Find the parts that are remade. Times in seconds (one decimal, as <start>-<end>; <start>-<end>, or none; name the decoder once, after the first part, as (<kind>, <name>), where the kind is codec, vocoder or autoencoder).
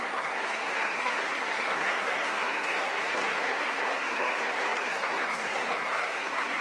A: 0.0-6.6 (codec, SNAC)